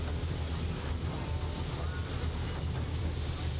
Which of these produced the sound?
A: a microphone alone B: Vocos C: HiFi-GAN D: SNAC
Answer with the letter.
A